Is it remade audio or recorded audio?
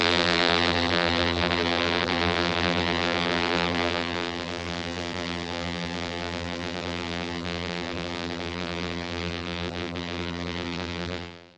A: remade